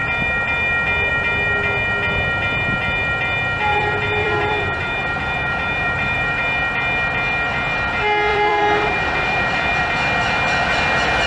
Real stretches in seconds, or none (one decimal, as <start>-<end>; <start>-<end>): 0.0-3.7; 6.4-8.3; 9.8-11.3